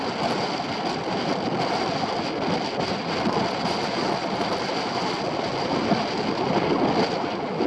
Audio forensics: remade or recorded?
recorded